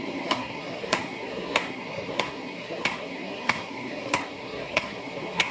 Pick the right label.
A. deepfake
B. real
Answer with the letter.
A